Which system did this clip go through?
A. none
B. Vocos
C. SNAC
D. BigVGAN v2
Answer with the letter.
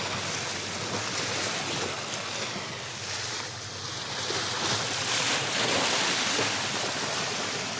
A